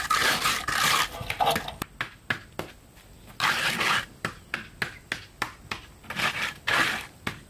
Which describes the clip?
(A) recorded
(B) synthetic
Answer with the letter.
A